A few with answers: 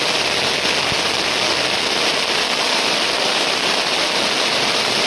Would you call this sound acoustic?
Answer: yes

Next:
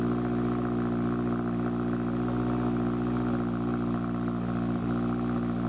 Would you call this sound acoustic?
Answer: yes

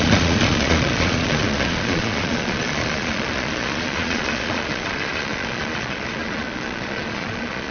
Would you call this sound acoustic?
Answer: no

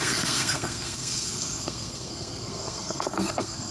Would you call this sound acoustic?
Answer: no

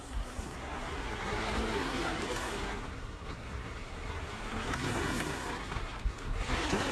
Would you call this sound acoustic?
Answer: no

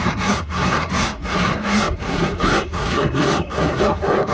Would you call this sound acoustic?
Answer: no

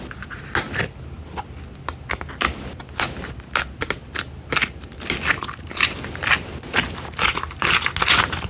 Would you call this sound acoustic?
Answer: yes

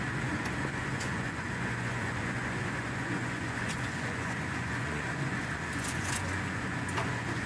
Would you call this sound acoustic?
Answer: no